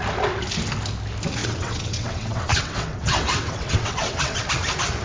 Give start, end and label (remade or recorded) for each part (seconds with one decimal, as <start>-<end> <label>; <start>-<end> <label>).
0.0-1.4 recorded; 1.4-4.4 remade; 4.4-5.0 recorded